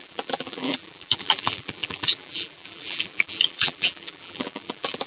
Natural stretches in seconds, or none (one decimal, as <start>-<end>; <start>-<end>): none